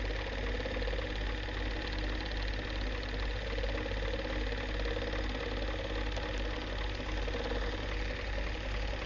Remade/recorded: recorded